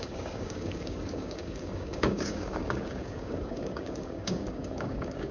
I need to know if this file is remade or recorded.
remade